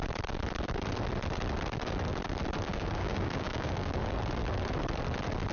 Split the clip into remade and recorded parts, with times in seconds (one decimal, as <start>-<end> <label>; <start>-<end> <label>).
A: 0.0-2.7 recorded; 2.7-4.0 remade; 4.0-5.5 recorded